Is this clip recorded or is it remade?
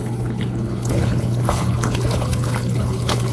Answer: remade